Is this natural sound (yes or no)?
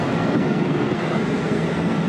no